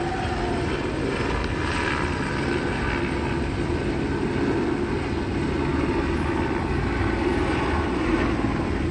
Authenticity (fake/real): real